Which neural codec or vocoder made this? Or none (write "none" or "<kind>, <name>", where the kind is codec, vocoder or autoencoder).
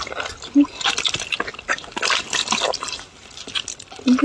none